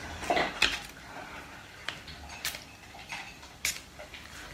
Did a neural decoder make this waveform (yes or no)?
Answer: no